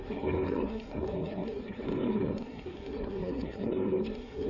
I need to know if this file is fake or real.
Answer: fake